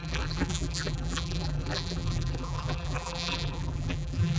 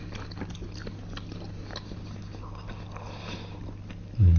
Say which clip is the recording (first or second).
second